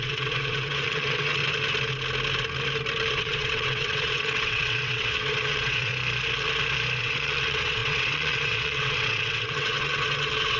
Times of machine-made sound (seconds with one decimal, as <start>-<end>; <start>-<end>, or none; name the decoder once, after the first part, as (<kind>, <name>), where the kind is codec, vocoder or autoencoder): 0.0-1.4 (vocoder, WaveNeXt); 3.2-5.9; 7.0-10.6